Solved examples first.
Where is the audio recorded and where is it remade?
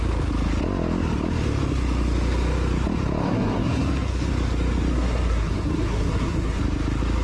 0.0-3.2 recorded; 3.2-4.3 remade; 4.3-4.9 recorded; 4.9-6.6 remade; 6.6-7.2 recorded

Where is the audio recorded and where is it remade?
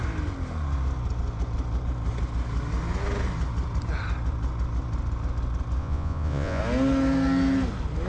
0.0-5.8 recorded; 5.8-6.6 remade; 6.6-8.1 recorded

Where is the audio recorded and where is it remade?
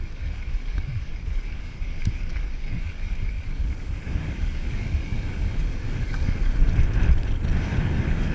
0.0-6.5 remade; 6.5-7.6 recorded; 7.6-8.3 remade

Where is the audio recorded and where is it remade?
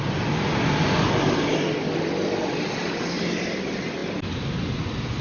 0.0-5.2 recorded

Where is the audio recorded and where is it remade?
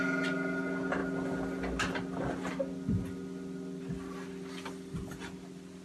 0.0-5.8 recorded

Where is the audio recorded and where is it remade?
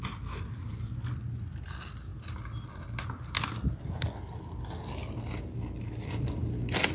0.0-6.9 recorded